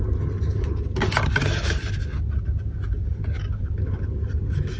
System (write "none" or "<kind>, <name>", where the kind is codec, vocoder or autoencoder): none